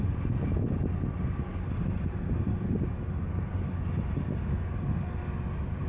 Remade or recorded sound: recorded